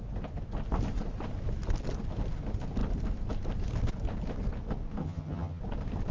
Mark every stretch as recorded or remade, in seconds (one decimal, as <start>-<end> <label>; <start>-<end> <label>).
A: 0.0-5.0 recorded; 5.0-5.6 remade; 5.6-6.1 recorded